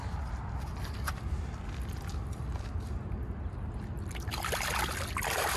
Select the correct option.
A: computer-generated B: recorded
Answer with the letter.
B